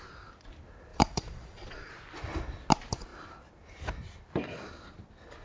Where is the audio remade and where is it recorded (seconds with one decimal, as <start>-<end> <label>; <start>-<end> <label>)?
0.0-0.9 recorded; 0.9-1.9 remade; 1.9-5.4 recorded